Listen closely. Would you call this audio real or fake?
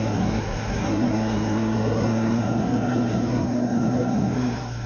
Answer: fake